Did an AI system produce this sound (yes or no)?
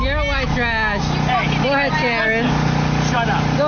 no